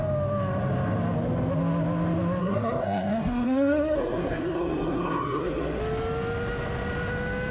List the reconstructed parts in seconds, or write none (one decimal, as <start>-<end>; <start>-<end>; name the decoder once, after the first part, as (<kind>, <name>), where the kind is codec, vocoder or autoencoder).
2.4-5.8 (codec, SNAC)